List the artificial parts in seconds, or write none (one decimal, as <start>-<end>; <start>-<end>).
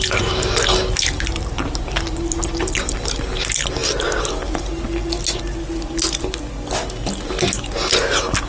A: none